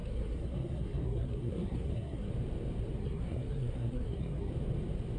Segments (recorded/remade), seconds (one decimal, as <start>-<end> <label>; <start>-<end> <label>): 0.0-2.3 remade; 2.3-3.0 recorded; 3.0-4.5 remade; 4.5-5.2 recorded